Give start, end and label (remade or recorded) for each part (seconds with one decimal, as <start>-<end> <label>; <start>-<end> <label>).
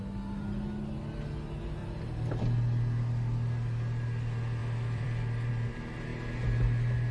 0.0-1.8 recorded; 1.8-2.4 remade; 2.4-4.6 recorded; 4.6-5.5 remade; 5.5-7.1 recorded